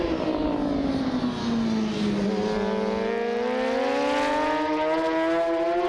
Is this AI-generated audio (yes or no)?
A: no